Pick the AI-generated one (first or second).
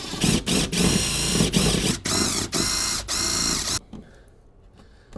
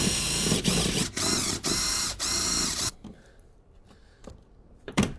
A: second